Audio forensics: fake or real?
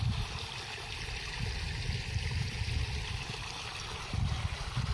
real